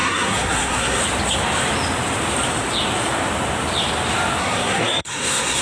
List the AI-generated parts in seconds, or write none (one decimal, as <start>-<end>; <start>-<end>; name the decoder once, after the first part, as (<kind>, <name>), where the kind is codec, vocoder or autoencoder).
0.0-1.0 (codec, SNAC); 4.4-5.6